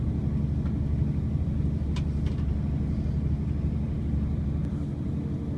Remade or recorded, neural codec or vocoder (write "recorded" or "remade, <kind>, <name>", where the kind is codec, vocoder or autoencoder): recorded